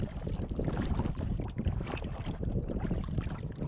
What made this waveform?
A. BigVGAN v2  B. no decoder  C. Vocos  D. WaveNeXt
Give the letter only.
B